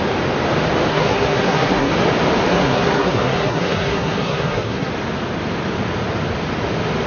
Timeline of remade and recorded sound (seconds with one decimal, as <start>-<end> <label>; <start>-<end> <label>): 0.0-0.9 recorded; 0.9-1.9 remade; 1.9-2.5 recorded; 2.5-4.9 remade; 4.9-7.1 recorded